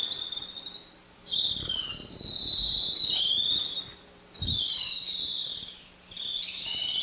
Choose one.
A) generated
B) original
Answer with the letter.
B